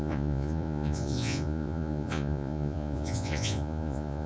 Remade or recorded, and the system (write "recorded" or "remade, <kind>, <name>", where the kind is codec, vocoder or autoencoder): remade, vocoder, Vocos